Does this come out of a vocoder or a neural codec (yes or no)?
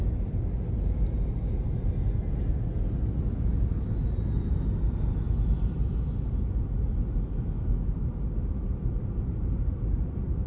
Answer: no